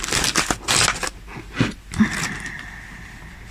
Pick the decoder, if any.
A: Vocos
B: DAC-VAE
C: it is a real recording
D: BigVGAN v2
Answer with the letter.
C